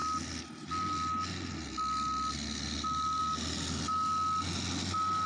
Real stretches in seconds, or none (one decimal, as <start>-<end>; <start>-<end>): 0.0-5.3